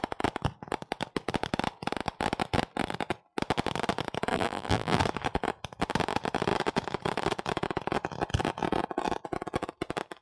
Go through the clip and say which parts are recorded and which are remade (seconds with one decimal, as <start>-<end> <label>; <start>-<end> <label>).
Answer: 0.0-4.3 recorded; 4.3-5.0 remade; 5.0-10.2 recorded